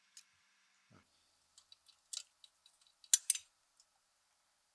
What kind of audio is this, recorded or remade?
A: recorded